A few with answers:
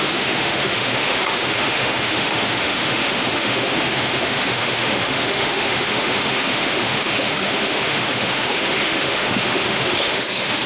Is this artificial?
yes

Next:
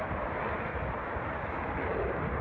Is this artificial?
no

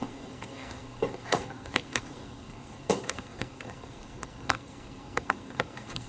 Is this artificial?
yes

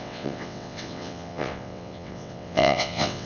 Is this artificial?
yes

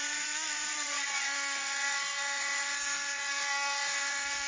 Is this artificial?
yes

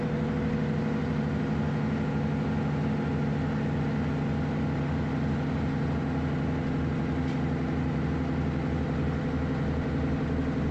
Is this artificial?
no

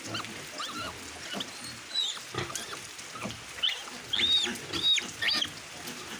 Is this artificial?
no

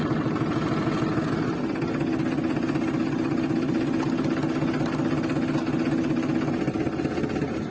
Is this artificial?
no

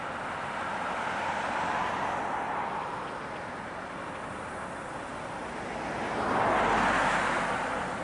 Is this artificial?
no